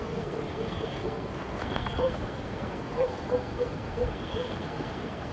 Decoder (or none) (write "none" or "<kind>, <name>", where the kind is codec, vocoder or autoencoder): codec, SNAC